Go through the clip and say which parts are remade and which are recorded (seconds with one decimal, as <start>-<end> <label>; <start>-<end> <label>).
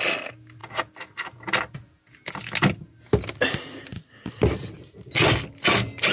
0.0-6.1 recorded